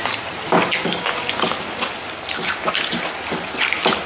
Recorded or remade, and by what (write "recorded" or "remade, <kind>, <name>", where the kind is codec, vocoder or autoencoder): recorded